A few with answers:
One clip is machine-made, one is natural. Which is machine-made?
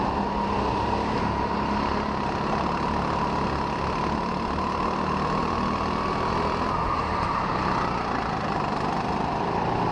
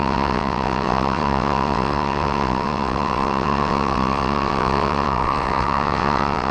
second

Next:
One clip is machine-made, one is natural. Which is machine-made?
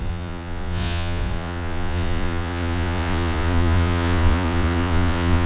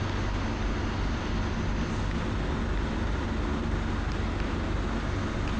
first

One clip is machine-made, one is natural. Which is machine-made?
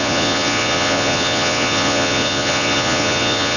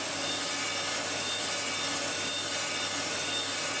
first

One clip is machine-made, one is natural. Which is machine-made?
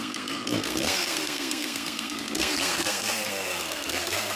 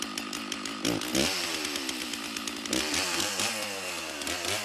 first